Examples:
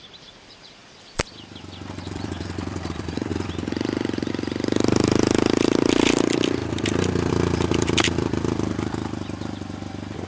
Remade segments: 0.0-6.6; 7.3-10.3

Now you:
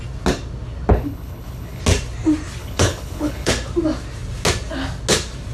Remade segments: 0.9-1.8; 2.6-3.5

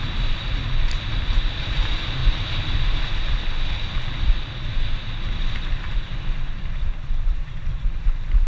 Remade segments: 0.0-0.6; 1.6-2.2; 7.1-8.5

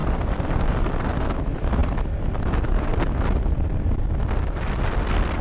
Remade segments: 1.8-2.5